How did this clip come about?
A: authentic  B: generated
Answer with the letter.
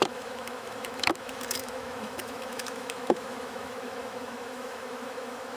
B